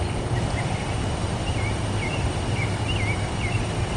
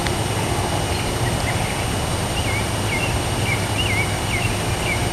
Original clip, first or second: second